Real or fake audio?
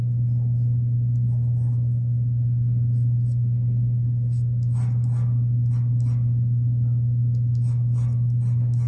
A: real